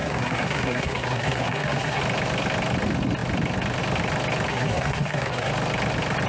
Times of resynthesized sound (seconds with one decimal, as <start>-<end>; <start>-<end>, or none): 0.0-2.0; 4.5-5.5